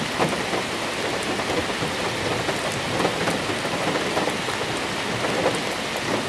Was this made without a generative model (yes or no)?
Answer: yes